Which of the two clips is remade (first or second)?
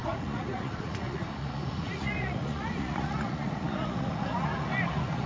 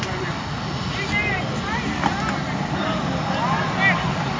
first